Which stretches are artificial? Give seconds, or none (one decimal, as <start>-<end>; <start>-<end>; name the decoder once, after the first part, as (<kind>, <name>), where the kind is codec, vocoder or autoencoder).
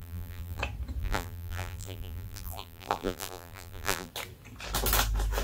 0.0-0.6 (vocoder, BigVGAN v2); 1.0-4.1